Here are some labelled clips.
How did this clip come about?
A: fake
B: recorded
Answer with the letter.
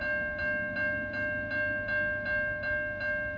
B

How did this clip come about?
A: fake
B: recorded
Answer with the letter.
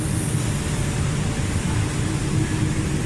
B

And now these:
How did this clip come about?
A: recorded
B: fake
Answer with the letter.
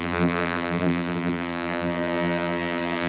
B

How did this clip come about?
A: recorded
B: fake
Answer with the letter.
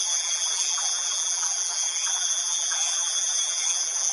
B